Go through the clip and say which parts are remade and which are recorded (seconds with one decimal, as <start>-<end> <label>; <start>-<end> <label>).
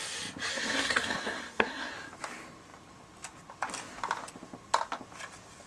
0.0-0.5 recorded; 0.5-1.9 remade; 1.9-5.7 recorded